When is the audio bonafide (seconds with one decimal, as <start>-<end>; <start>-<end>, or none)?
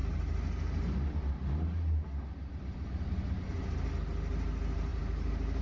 0.0-4.9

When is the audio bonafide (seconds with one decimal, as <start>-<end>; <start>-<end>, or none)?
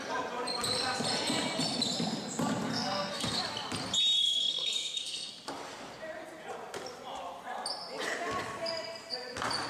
0.0-2.7; 3.4-4.2; 5.3-9.7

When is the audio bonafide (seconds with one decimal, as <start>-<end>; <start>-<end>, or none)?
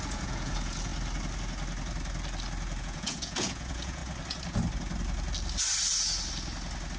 0.9-2.8; 4.0-7.0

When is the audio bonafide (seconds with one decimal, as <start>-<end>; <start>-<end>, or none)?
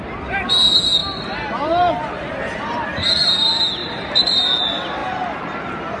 0.0-1.0; 2.8-3.8; 4.4-6.0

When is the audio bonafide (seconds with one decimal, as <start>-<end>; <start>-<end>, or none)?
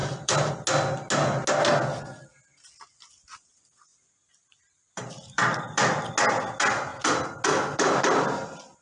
0.5-3.9; 6.1-8.8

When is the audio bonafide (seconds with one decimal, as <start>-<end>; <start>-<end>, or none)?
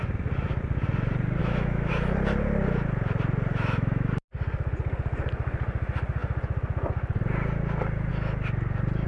0.0-1.4; 1.9-3.5; 4.1-9.1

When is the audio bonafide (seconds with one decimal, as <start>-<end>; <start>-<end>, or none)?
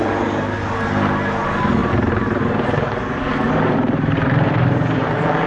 0.0-1.8; 5.1-5.5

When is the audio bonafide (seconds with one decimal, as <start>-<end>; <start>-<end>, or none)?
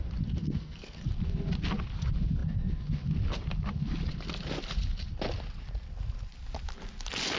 0.0-0.4; 1.0-7.4